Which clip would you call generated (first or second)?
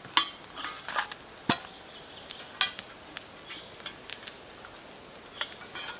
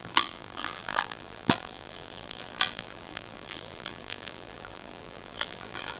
second